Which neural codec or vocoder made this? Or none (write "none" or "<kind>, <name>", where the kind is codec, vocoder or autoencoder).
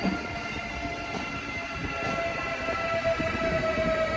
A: none